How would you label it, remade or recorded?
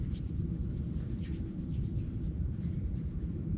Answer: remade